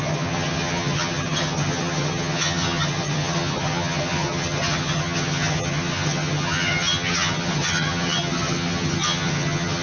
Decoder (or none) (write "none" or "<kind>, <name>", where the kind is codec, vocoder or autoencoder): vocoder, HiFi-GAN